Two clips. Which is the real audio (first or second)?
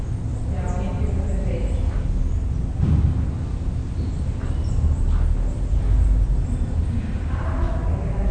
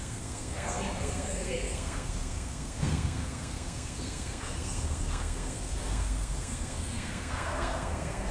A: first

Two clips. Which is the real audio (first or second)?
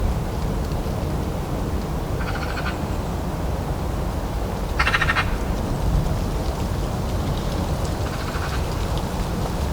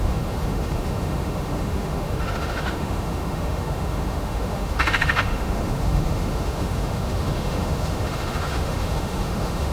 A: first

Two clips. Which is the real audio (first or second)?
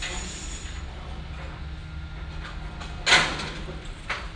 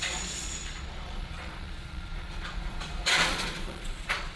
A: first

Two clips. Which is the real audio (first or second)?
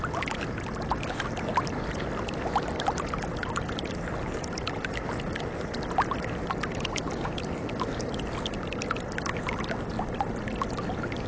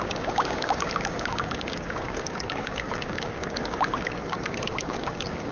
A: first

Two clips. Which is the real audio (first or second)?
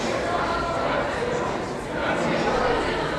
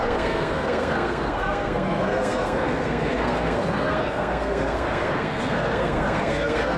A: first